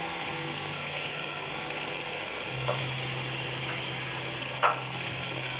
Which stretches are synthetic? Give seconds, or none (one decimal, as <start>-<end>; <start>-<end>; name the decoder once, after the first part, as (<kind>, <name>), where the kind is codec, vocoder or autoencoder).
0.0-2.8 (codec, SNAC); 4.4-5.6